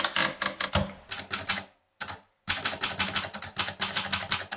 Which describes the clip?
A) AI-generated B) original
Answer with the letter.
B